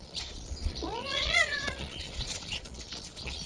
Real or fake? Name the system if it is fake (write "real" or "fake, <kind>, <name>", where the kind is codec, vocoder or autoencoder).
fake, vocoder, Vocos